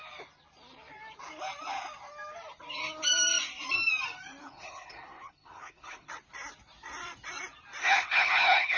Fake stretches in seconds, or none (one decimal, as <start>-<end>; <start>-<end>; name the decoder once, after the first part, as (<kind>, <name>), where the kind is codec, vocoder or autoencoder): 4.4-6.1 (codec, HILCodec); 7.8-8.8